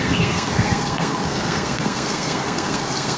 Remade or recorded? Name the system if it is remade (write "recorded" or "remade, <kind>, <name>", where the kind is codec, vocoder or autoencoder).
remade, codec, SNAC